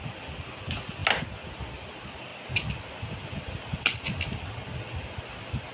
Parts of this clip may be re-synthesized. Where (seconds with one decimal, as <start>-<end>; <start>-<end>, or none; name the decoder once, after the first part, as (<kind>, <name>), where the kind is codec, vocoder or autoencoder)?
none